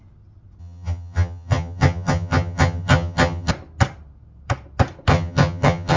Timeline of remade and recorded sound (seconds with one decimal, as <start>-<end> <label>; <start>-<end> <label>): 0.0-0.6 recorded; 0.6-3.5 remade; 3.5-5.1 recorded; 5.1-6.0 remade